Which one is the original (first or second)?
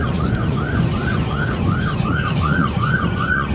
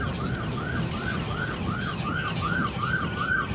second